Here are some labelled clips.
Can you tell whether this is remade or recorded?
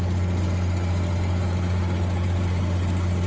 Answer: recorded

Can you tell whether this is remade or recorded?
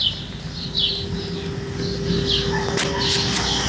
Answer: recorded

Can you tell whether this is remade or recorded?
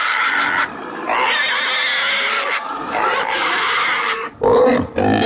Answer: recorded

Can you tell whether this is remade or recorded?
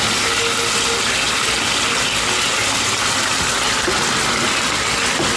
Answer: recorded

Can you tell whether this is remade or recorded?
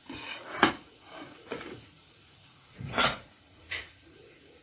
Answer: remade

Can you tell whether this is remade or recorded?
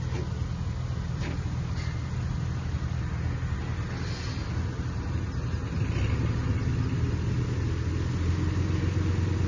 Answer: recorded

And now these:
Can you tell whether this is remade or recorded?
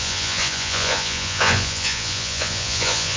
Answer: remade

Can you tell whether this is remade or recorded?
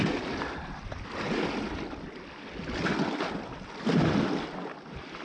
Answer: recorded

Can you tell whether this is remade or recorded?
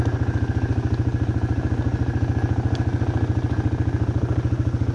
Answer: recorded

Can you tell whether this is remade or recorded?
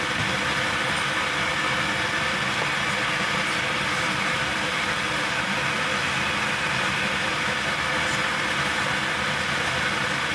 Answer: recorded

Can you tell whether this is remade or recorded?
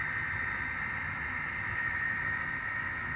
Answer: recorded